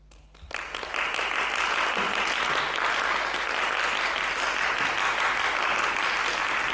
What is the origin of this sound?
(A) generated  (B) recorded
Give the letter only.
B